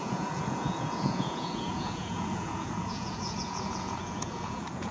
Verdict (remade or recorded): remade